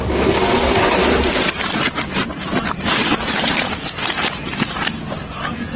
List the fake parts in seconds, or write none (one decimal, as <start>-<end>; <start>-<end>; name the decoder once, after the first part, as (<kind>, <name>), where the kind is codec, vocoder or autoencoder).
0.4-3.8 (vocoder, BigVGAN v2)